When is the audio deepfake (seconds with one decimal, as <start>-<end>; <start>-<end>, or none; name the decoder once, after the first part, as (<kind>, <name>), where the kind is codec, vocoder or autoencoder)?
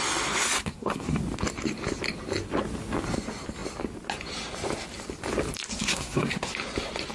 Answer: 0.6-1.2 (codec, SNAC); 5.7-6.5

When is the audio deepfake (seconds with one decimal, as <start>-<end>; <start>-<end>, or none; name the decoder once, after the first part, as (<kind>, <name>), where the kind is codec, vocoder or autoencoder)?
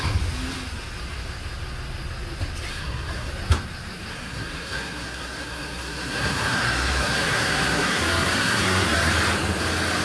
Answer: 2.7-3.3 (codec, SNAC); 4.1-9.1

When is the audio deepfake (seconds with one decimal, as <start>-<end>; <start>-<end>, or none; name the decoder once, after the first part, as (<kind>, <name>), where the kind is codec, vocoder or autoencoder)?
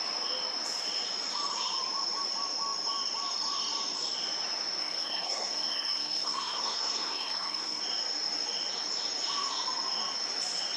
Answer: 4.8-7.8 (codec, SNAC)